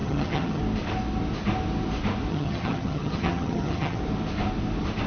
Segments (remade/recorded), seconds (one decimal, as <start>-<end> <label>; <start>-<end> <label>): 0.0-0.6 remade; 0.6-2.3 recorded; 2.3-4.0 remade; 4.0-5.1 recorded